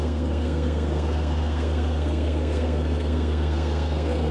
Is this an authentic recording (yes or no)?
no